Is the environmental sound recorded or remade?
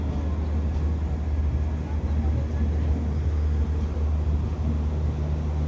recorded